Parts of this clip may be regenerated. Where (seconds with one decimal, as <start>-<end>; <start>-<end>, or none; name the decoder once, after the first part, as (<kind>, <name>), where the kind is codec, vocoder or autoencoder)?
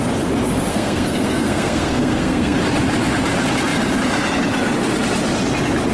0.7-2.6 (codec, SNAC)